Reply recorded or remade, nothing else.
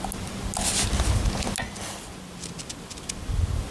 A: recorded